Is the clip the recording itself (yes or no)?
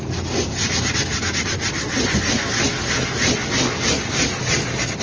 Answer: yes